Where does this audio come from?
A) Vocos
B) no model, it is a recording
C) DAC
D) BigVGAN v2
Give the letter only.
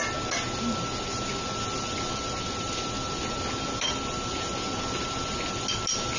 B